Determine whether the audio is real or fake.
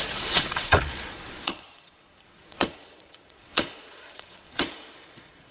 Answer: fake